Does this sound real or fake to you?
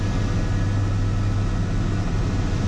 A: real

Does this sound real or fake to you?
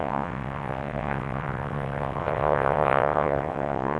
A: fake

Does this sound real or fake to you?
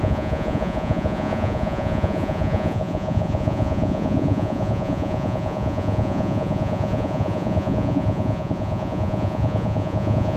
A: fake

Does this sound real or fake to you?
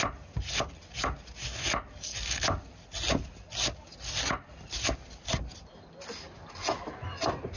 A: real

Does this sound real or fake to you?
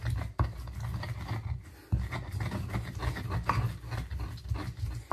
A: real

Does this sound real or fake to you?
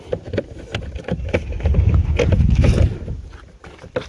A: real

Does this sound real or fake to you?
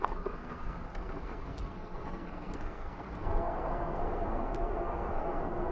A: fake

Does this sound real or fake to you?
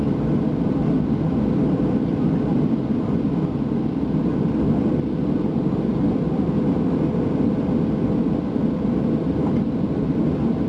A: fake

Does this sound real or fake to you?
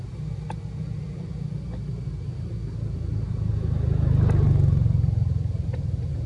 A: real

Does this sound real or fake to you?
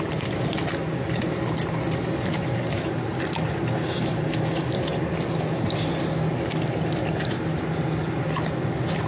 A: real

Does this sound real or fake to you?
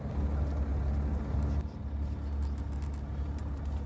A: real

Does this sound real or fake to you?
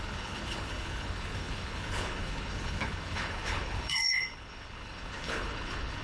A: fake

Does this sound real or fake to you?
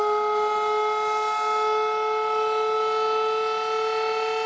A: real